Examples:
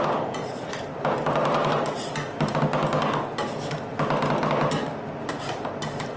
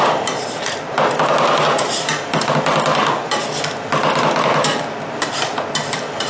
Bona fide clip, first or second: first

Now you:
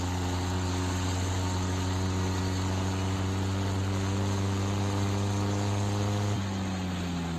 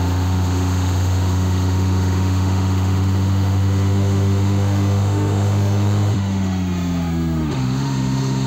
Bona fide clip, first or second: first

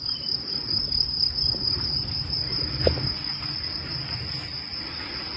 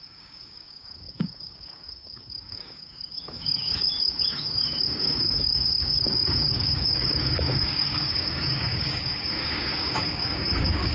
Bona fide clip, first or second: first